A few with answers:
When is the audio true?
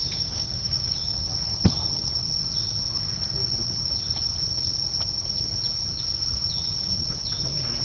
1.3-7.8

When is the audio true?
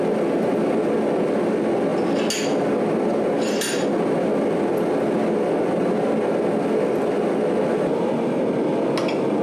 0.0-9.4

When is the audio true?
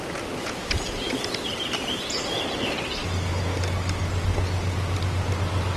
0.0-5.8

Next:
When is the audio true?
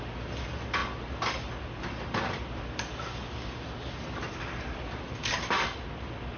0.0-6.4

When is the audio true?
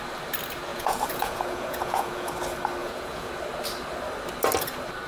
0.0-0.7; 2.3-2.8; 3.3-5.1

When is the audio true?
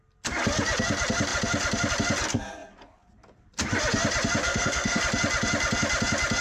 0.0-4.4; 5.0-6.4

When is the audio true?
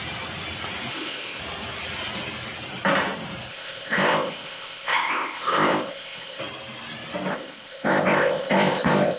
0.0-0.9; 1.4-3.5; 6.4-7.3